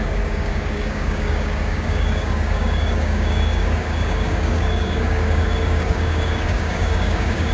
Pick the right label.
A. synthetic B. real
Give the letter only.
A